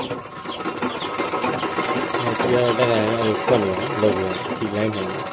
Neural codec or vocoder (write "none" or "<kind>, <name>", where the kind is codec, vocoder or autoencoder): none